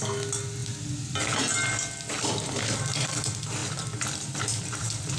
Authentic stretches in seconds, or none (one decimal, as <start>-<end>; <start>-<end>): 0.0-3.6